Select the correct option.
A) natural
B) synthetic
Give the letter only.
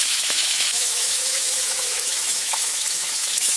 B